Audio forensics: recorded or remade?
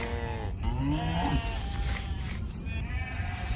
recorded